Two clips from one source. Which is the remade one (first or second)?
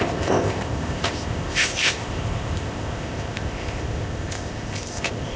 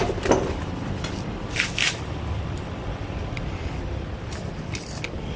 first